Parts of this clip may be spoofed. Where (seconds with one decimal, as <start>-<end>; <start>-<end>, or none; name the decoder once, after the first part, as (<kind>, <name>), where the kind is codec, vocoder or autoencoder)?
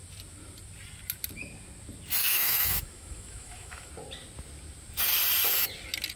2.2-3.9 (autoencoder, DAC-VAE)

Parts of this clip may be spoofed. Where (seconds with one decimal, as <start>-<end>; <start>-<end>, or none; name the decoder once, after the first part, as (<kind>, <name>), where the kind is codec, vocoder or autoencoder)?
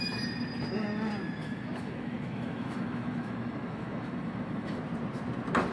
1.4-4.8 (autoencoder, DAC-VAE)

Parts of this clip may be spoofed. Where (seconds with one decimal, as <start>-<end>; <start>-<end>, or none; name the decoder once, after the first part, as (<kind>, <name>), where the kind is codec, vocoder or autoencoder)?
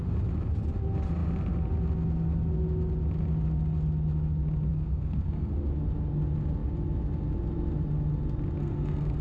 4.7-5.7 (codec, SNAC); 8.6-9.2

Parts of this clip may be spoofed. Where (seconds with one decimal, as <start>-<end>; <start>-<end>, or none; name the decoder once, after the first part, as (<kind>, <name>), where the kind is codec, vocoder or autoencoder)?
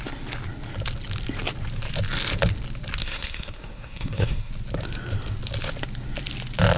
3.0-4.5 (codec, SNAC)